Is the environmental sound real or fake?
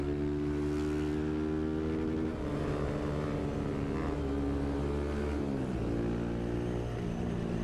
real